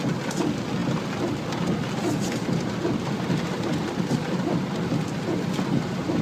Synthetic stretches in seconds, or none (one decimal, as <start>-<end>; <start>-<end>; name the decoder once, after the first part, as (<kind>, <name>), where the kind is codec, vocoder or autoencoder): none